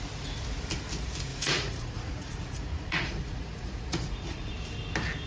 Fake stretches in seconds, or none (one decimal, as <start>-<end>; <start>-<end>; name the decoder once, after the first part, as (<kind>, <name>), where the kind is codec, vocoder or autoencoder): 1.3-4.5 (vocoder, Vocos)